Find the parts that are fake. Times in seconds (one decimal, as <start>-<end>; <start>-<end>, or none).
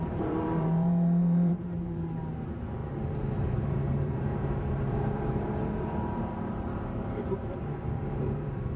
0.0-8.8